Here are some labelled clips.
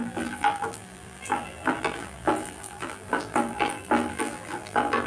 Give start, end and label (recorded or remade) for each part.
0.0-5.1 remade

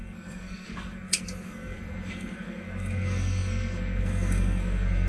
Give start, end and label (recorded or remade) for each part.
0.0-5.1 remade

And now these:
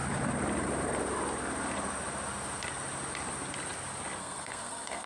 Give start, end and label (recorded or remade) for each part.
0.0-4.2 recorded; 4.2-5.1 remade

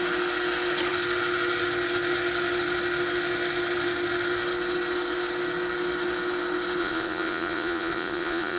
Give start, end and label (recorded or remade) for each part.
0.0-6.8 recorded; 6.8-8.6 remade

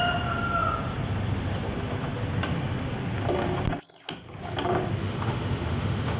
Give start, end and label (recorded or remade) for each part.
0.0-5.0 recorded; 5.0-6.2 remade

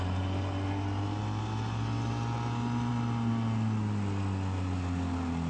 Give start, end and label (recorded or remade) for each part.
0.0-5.5 recorded